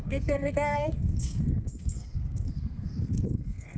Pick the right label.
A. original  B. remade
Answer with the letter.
B